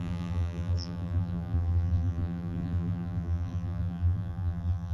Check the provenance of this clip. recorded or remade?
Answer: remade